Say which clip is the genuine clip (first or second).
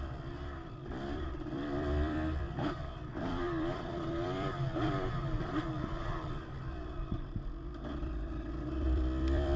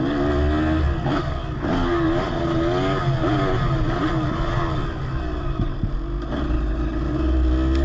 second